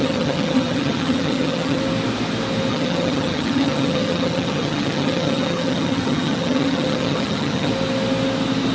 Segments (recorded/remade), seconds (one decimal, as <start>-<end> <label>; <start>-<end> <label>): 0.0-1.8 remade; 1.8-2.7 recorded; 2.7-7.7 remade; 7.7-8.7 recorded